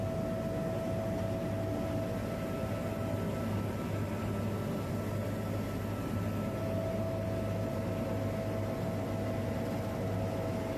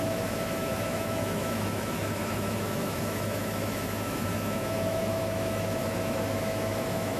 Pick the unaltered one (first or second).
first